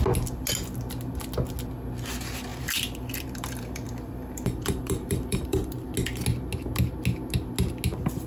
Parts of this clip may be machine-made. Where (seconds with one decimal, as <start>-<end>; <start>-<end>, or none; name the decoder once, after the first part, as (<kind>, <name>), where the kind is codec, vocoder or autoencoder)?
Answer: 2.5-5.9 (vocoder, BigVGAN v2)

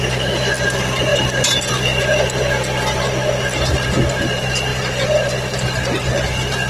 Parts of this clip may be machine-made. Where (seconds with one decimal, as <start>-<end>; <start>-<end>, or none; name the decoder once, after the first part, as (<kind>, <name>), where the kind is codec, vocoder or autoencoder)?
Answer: none

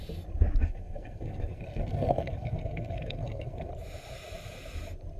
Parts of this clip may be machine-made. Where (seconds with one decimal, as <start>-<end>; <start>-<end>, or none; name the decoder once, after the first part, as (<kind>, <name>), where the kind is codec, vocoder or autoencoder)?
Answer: 0.6-3.7 (codec, SNAC)

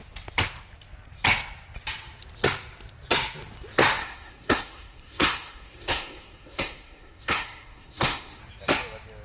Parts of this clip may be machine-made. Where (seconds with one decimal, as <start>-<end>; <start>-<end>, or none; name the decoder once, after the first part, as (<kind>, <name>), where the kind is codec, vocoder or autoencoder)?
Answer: 4.0-8.4 (codec, SNAC)

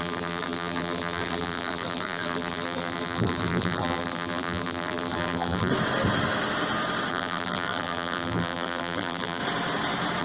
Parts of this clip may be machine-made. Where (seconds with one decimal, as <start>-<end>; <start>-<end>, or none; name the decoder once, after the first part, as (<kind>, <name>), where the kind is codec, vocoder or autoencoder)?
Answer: 0.0-5.7 (vocoder, BigVGAN v2); 7.1-9.4

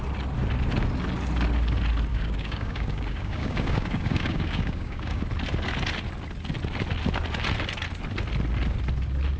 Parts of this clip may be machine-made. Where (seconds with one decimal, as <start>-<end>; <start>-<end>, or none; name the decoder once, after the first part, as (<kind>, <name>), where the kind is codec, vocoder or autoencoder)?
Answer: 2.1-5.2 (codec, DAC)